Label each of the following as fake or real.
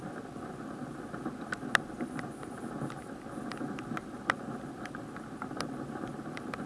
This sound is real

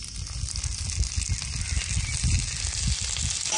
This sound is real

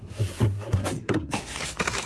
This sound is fake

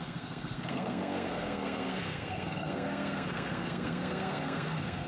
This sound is fake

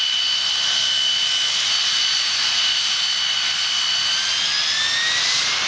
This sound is real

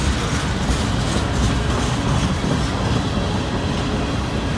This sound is real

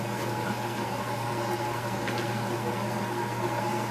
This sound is fake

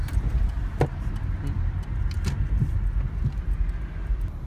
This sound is real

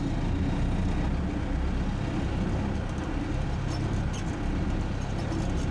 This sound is real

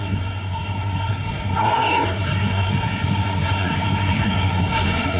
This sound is fake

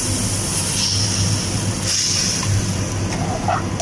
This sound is real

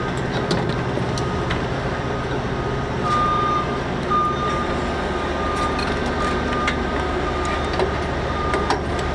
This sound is real